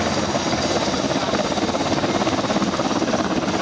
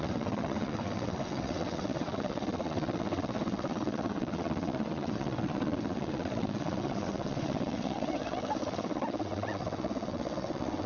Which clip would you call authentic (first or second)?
first